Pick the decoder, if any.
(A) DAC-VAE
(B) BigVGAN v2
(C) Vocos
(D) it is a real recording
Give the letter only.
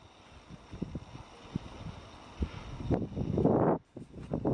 D